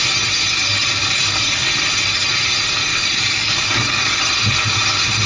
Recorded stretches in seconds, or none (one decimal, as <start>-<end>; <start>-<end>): 0.0-1.0; 1.7-2.9; 4.2-5.3